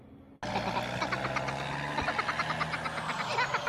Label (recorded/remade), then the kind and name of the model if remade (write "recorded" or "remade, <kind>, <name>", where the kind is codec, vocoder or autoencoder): recorded